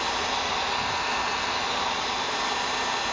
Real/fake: real